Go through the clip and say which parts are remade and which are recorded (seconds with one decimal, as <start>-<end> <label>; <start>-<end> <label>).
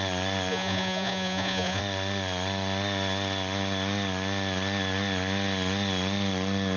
0.0-0.5 recorded; 0.5-1.8 remade; 1.8-6.8 recorded